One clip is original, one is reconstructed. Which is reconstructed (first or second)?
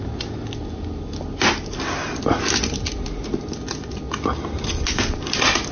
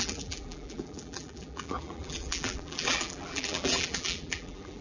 second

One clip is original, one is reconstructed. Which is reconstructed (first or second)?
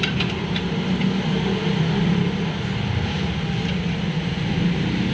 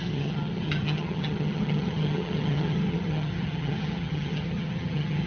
second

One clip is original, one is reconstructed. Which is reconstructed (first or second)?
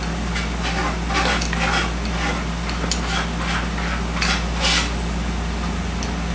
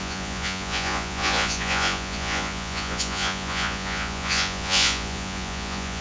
second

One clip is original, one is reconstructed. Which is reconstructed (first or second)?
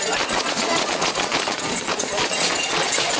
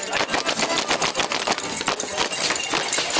first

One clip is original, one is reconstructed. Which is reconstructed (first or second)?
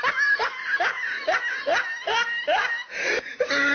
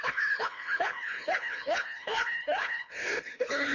second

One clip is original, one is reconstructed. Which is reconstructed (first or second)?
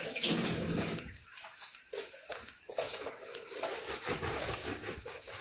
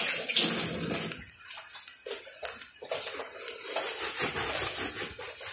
first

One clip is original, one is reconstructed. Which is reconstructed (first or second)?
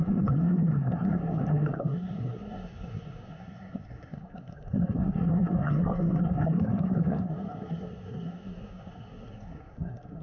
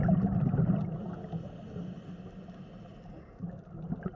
first